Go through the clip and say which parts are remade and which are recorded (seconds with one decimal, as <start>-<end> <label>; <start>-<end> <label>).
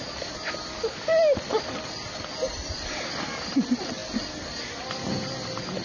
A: 0.0-5.8 recorded